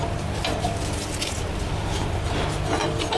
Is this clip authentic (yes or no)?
yes